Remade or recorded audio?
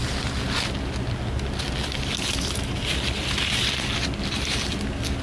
recorded